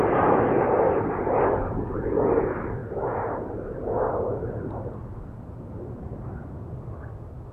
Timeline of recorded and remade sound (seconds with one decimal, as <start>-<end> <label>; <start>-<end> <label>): 0.0-7.5 recorded